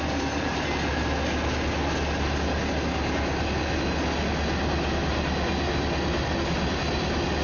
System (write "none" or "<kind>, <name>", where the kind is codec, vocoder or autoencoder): none